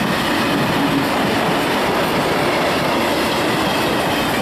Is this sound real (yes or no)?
yes